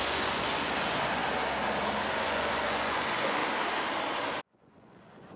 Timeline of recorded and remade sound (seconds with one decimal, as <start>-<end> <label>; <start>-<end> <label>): 0.0-1.2 remade; 1.2-2.1 recorded; 2.1-3.4 remade; 3.4-4.4 recorded; 4.4-5.4 remade